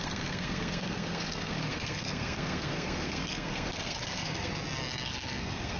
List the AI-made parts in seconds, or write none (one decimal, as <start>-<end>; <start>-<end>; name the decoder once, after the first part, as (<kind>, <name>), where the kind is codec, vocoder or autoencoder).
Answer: 0.0-4.5 (codec, SNAC); 5.1-5.8